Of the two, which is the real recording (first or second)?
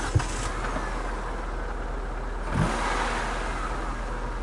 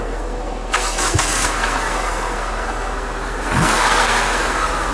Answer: first